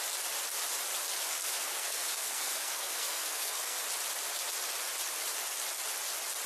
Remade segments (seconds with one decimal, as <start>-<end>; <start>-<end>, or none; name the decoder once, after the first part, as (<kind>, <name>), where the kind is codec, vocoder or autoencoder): 1.3-3.8 (codec, SNAC)